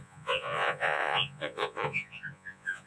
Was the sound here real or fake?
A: fake